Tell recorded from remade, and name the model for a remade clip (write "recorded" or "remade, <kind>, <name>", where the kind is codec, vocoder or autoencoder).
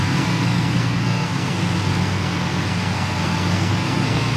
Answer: remade, codec, SNAC